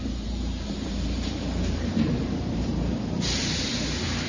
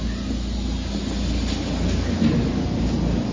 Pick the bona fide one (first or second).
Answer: second